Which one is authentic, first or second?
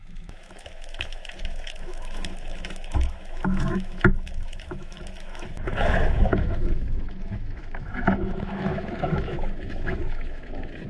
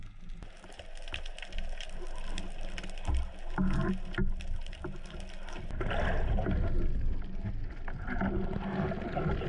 second